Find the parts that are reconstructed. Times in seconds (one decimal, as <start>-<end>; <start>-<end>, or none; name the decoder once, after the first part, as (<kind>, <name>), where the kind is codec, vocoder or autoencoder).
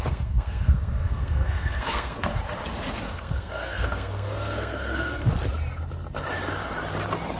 0.0-2.3 (codec, SNAC); 2.9-5.3